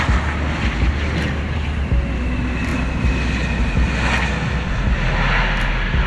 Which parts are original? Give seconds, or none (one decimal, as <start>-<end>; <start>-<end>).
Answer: 0.0-6.1